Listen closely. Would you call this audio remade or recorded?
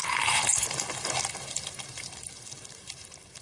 recorded